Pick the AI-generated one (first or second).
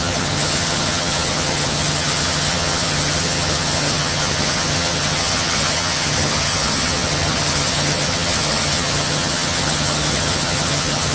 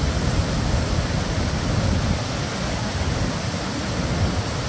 first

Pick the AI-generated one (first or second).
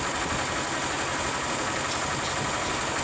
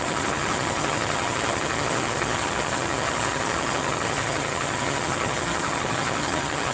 second